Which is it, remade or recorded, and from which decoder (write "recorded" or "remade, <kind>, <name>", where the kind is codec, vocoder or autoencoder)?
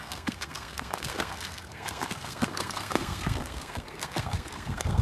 remade, codec, SNAC